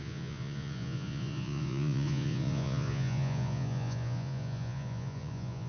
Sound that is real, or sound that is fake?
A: fake